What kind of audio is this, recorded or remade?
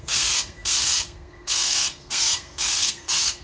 remade